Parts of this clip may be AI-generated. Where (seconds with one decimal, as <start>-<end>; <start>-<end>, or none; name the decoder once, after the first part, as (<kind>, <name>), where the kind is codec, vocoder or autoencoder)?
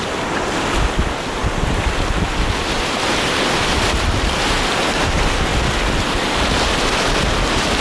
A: none